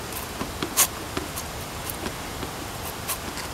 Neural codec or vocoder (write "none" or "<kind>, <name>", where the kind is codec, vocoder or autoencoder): none